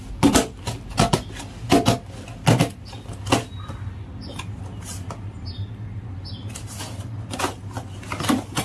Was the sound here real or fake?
real